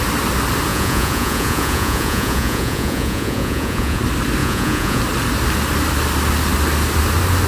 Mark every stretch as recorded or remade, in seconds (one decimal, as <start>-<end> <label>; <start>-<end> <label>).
0.0-0.7 recorded; 0.7-4.0 remade; 4.0-4.4 recorded; 4.4-5.0 remade; 5.0-7.5 recorded